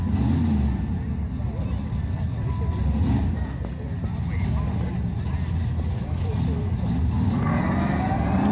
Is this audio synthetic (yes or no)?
no